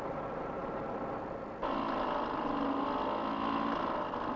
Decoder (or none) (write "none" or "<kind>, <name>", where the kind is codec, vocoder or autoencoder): none